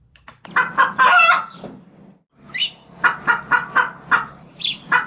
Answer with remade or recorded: recorded